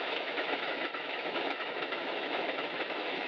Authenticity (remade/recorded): remade